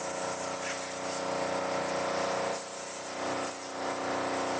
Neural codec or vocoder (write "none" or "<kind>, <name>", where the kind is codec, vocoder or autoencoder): none